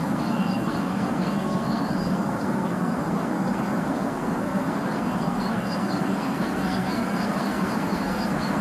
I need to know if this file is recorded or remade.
remade